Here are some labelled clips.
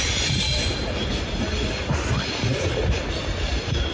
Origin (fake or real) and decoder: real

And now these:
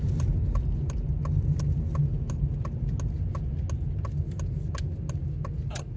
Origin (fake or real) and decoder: real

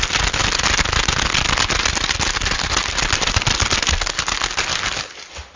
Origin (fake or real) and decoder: real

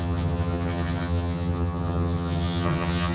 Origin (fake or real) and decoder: fake, vocoder, HiFi-GAN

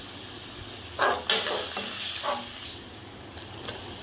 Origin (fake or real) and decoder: real